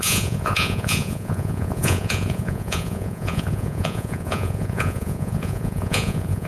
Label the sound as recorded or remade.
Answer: remade